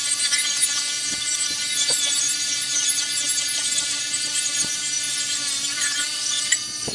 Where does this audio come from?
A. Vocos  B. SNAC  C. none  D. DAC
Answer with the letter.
C